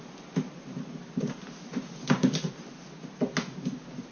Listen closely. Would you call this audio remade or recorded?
recorded